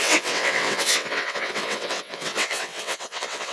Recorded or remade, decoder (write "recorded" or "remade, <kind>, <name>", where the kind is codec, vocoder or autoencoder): remade, vocoder, WaveNeXt